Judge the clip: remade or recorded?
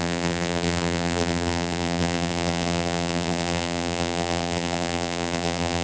remade